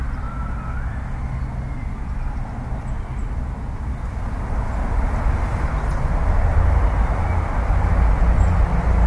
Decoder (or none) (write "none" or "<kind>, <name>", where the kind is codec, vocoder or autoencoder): none